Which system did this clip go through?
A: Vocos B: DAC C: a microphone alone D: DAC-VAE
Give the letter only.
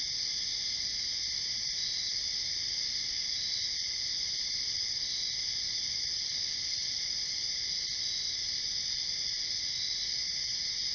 C